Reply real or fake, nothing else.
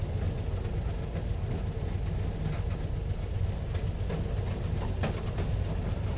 real